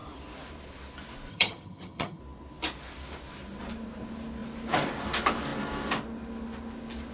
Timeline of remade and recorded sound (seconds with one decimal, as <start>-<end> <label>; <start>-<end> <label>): 0.0-1.3 recorded; 1.3-2.2 remade; 2.2-7.1 recorded